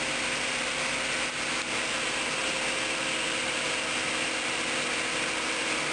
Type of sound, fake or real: real